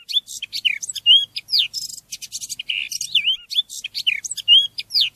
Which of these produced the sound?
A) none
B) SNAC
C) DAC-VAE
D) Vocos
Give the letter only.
A